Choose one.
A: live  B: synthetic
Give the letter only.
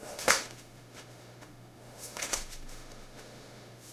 B